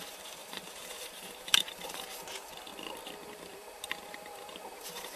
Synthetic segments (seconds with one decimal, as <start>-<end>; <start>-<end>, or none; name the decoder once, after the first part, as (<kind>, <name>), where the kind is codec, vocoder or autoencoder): 0.0-2.7 (vocoder, BigVGAN v2); 3.3-5.2